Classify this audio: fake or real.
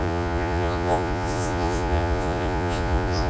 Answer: fake